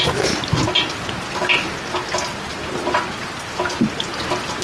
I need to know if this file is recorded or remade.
recorded